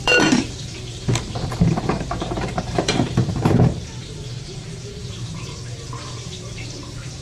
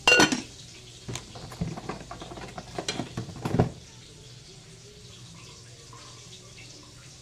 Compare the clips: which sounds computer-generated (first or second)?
first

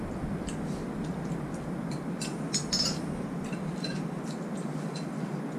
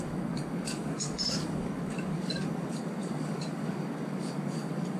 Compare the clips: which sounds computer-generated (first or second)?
second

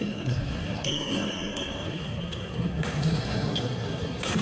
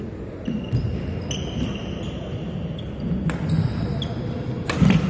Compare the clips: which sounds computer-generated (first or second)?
first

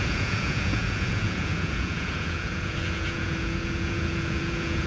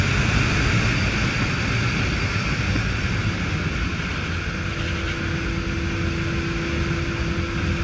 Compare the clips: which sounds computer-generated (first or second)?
first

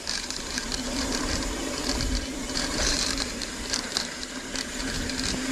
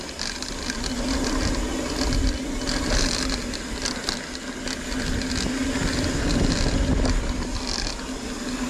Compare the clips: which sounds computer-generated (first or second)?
first